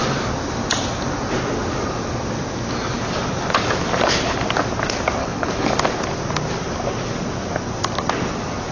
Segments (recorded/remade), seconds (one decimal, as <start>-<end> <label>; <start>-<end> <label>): 0.0-5.2 recorded; 5.2-5.7 remade; 5.7-8.7 recorded